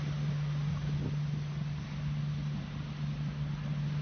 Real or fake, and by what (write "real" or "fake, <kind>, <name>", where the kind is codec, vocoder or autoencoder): real